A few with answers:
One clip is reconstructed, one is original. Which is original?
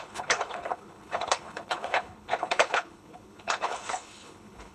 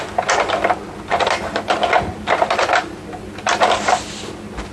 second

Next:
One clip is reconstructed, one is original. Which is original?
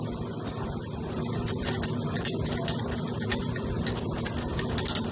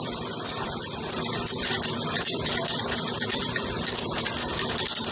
first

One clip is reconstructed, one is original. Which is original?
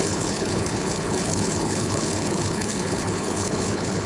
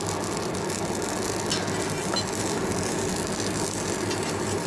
second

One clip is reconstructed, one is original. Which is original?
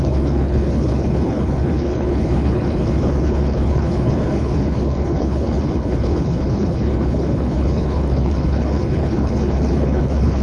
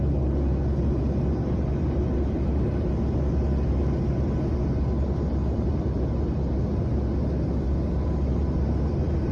second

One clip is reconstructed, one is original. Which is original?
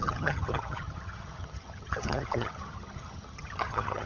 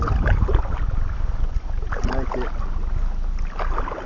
second